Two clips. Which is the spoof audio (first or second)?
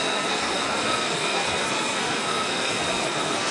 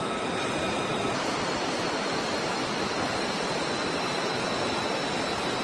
first